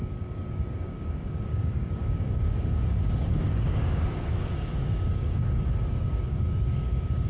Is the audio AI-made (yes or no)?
yes